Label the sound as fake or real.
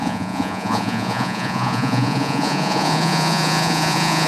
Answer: fake